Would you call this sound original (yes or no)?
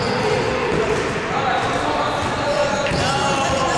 yes